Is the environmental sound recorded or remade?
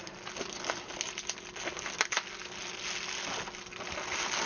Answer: recorded